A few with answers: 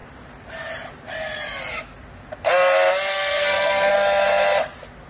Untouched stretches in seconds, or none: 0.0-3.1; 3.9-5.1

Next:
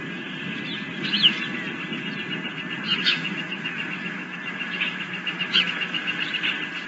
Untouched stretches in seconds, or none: 0.0-2.9; 6.2-6.9

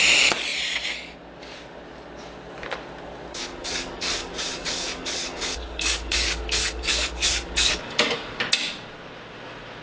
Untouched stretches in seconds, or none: 0.0-3.4; 8.4-9.8